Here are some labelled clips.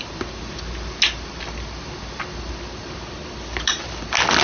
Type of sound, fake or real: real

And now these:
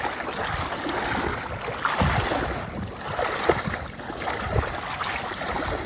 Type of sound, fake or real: real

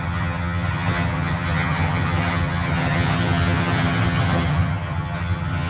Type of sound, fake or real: fake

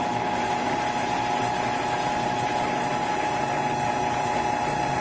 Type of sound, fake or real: real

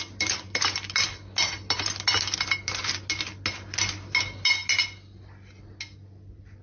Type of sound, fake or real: real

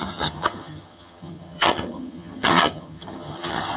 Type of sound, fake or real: fake